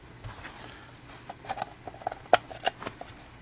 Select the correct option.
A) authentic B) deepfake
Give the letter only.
A